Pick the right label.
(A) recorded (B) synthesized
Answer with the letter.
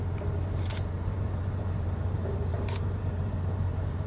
B